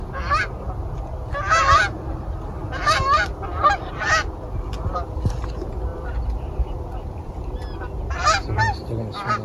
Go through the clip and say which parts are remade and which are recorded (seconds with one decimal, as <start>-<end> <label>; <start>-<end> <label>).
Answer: 0.0-2.6 recorded; 2.6-3.7 remade; 3.7-5.9 recorded; 5.9-7.3 remade; 7.3-9.4 recorded